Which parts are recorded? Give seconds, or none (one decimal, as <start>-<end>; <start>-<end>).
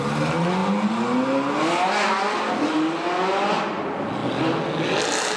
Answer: 0.0-5.4